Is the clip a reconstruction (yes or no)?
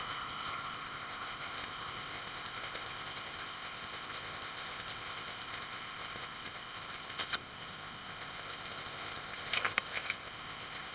yes